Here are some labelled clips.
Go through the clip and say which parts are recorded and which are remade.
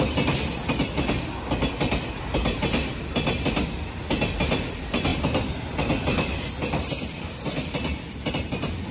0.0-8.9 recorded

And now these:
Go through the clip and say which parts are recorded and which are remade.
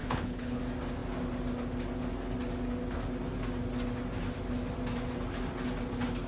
0.0-0.6 remade; 0.6-6.3 recorded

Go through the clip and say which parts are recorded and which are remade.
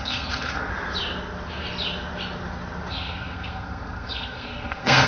0.0-0.7 remade; 0.7-2.9 recorded; 2.9-5.1 remade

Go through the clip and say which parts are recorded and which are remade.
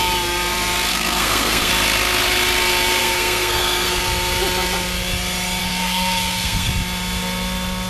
0.0-0.9 recorded; 0.9-1.7 remade; 1.7-3.0 recorded; 3.0-4.0 remade; 4.0-5.6 recorded; 5.6-6.7 remade; 6.7-7.9 recorded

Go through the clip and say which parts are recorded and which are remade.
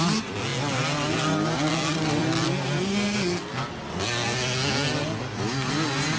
0.0-6.2 recorded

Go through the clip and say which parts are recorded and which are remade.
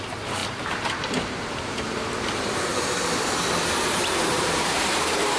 0.0-2.7 remade; 2.7-4.0 recorded; 4.0-5.4 remade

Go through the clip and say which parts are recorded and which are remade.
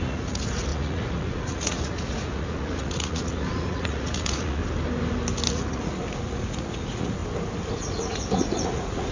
0.0-4.6 remade; 4.6-5.5 recorded; 5.5-7.2 remade; 7.2-7.8 recorded; 7.8-9.1 remade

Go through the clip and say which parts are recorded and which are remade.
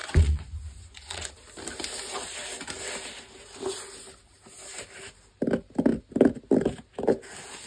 0.0-1.3 remade; 1.3-7.7 recorded